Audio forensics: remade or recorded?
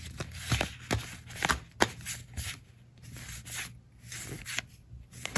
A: recorded